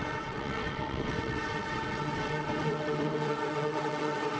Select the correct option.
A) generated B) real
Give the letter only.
A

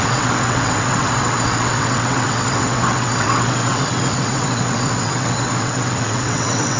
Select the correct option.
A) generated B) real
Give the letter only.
A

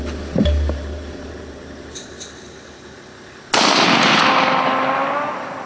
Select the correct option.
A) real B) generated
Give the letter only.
A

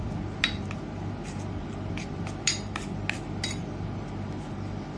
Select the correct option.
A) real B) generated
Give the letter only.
A